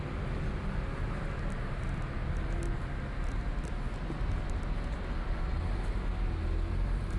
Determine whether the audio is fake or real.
real